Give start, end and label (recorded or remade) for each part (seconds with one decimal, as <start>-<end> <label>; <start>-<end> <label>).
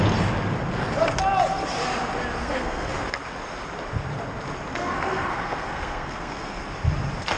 0.0-2.4 recorded; 2.4-2.9 remade; 2.9-4.7 recorded; 4.7-6.6 remade; 6.6-7.4 recorded